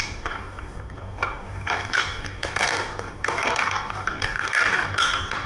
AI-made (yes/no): yes